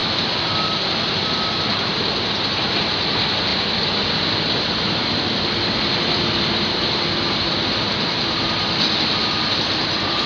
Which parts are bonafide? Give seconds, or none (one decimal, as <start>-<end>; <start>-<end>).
0.0-10.3